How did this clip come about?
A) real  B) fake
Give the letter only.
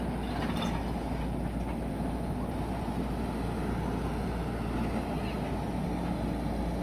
A